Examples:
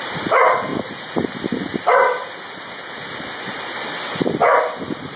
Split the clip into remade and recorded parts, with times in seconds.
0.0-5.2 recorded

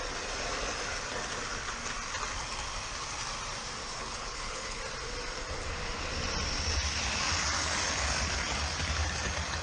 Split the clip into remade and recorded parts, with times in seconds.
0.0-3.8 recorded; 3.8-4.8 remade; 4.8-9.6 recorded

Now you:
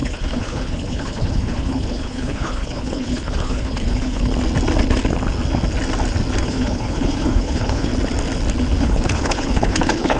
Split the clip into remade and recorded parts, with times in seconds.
0.0-4.3 remade; 4.3-6.4 recorded; 6.4-7.9 remade; 7.9-8.8 recorded; 8.8-10.2 remade

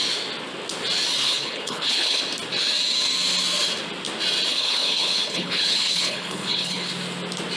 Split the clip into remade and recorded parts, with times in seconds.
0.0-1.2 recorded; 1.2-2.2 remade; 2.2-4.5 recorded; 4.5-6.9 remade; 6.9-7.6 recorded